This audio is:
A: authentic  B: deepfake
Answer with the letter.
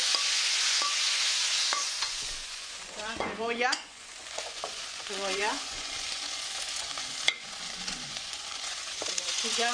B